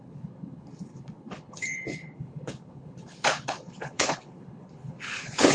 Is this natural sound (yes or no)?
no